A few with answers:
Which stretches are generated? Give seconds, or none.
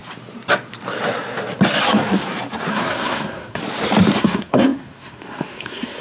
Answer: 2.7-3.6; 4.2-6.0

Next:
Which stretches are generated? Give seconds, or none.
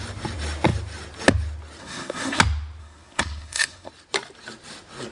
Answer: 1.8-2.4; 2.8-3.9